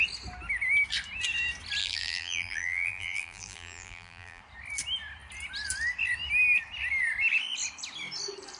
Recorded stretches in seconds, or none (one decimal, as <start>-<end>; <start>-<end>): 0.0-1.8; 4.4-8.6